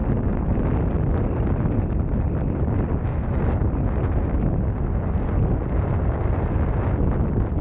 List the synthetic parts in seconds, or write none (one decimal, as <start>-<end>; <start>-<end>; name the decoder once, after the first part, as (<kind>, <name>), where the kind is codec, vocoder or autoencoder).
none